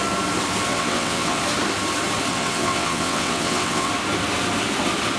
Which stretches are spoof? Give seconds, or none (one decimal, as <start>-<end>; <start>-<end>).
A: 0.7-1.4; 2.3-3.9